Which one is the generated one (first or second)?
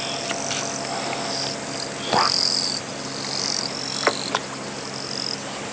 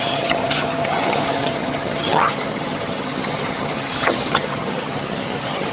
second